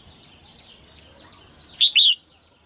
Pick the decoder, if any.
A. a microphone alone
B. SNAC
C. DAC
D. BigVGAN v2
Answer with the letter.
A